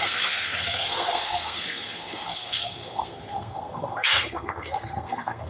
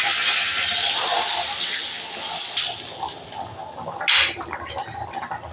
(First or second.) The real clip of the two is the second